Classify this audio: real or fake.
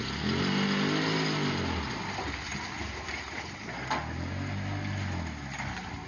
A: real